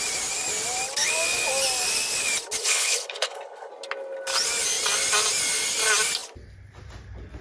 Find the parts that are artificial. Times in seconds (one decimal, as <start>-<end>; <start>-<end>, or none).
2.6-3.7